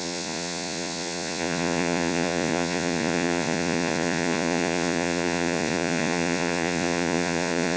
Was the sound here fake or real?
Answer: fake